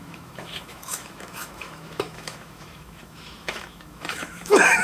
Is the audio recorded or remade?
remade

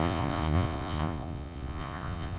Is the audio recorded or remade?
remade